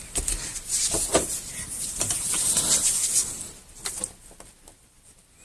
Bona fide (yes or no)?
yes